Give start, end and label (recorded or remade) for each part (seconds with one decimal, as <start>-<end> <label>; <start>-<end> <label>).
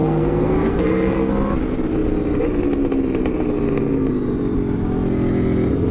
0.0-1.3 remade; 1.3-5.9 recorded